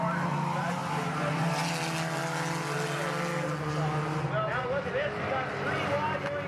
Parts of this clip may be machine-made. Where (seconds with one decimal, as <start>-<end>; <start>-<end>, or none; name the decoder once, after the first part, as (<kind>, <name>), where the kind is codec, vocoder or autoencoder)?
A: none